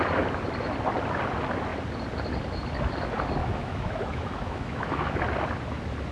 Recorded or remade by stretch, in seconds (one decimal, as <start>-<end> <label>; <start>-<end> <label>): 0.0-3.4 recorded; 3.4-5.2 remade; 5.2-6.1 recorded

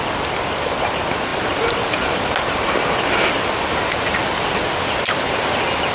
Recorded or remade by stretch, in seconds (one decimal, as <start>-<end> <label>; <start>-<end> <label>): 0.0-5.9 recorded

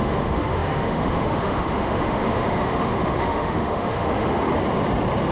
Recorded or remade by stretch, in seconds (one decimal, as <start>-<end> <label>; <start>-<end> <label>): 0.0-4.5 remade; 4.5-5.3 recorded